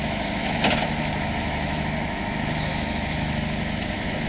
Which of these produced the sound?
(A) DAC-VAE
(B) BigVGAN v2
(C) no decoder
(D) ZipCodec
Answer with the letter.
A